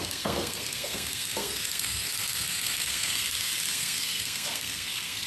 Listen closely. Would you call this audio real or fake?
fake